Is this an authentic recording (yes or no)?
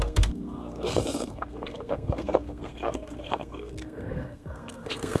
no